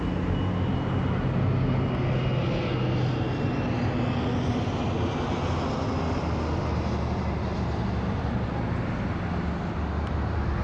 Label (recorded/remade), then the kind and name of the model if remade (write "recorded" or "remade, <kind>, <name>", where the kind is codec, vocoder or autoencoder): recorded